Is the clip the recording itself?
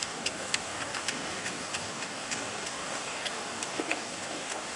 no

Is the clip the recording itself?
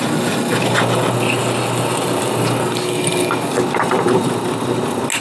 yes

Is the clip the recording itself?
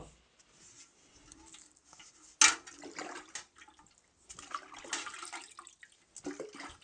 yes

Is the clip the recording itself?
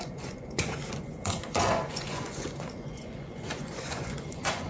no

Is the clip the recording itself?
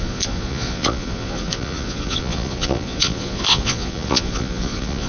no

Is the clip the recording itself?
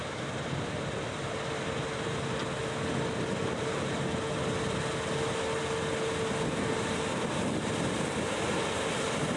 yes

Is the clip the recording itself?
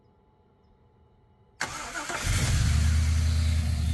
yes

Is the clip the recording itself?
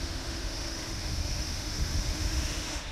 no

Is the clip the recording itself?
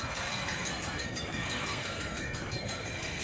no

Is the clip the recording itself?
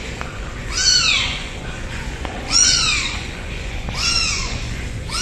no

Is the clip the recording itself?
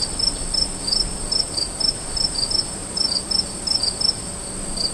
yes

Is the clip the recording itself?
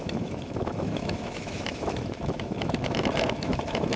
no